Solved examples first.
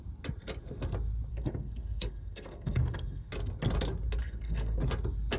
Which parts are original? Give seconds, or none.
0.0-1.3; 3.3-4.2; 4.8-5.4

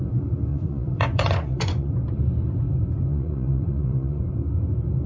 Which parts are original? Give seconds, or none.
0.0-0.5; 1.9-3.1; 4.2-5.1

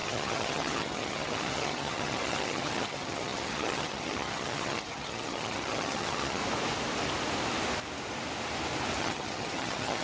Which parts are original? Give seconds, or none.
6.4-9.0

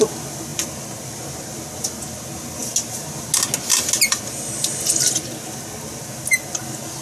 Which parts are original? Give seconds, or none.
0.0-7.0

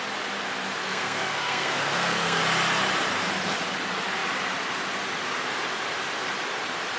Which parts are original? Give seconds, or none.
0.0-0.8; 2.4-7.0

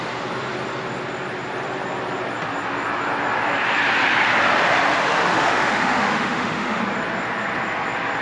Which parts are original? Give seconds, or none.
0.0-5.2; 6.8-8.2

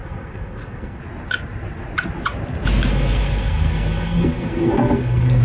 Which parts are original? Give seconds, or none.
1.0-2.9

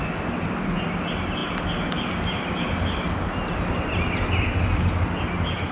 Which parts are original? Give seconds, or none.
0.0-5.7